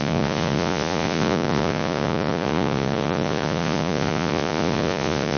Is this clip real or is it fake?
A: fake